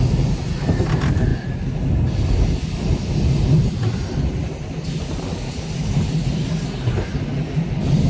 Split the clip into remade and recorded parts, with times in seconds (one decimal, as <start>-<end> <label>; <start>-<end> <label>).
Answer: 0.0-8.1 recorded

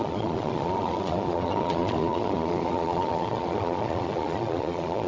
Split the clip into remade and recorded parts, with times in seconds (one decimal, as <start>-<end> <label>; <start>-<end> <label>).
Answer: 0.0-5.1 remade

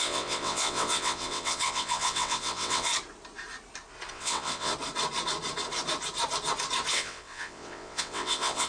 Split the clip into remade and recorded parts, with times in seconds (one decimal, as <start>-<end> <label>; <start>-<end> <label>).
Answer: 0.0-2.9 remade; 2.9-4.1 recorded; 4.1-4.7 remade; 4.7-6.9 recorded; 6.9-8.7 remade

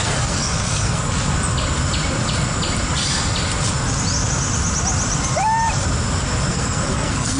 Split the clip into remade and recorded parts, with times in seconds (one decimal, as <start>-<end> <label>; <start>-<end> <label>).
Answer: 0.0-1.0 remade; 1.0-6.5 recorded; 6.5-7.4 remade

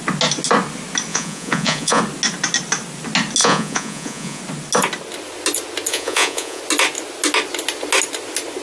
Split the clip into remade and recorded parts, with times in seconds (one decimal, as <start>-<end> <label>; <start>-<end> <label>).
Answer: 0.0-1.1 recorded; 1.1-2.0 remade; 2.0-3.4 recorded; 3.4-4.4 remade; 4.4-5.9 recorded; 5.9-6.6 remade; 6.6-8.6 recorded

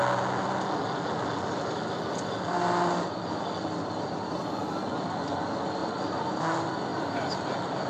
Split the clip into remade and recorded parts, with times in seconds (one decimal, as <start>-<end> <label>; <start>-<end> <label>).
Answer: 0.0-5.8 recorded; 5.8-6.4 remade; 6.4-6.9 recorded; 6.9-7.4 remade; 7.4-7.9 recorded

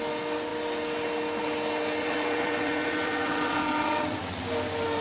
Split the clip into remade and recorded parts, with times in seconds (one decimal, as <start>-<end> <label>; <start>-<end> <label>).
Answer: 0.0-2.0 recorded; 2.0-4.4 remade; 4.4-5.0 recorded